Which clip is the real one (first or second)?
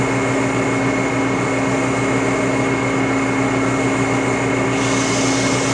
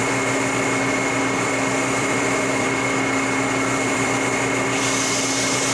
first